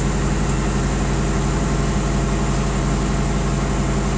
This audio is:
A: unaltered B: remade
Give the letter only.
A